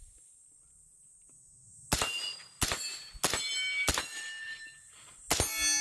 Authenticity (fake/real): real